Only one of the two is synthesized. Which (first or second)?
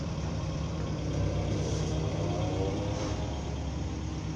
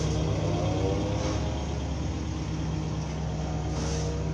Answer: first